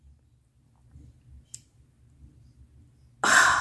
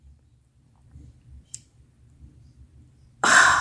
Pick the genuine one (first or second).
first